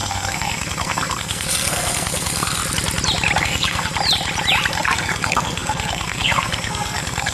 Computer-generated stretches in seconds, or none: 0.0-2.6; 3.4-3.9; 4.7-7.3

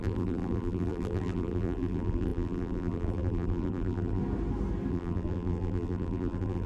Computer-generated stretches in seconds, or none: 0.0-4.2; 4.9-6.7

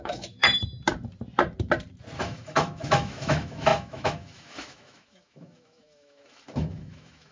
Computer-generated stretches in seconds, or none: 0.0-0.4; 2.2-7.3

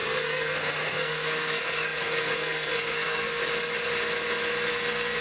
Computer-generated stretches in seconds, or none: 0.0-3.4; 4.7-5.2